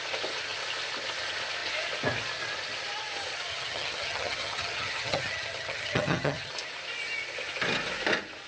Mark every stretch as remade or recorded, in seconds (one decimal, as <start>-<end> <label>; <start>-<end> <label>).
0.0-3.5 recorded; 3.5-6.5 remade; 6.5-8.5 recorded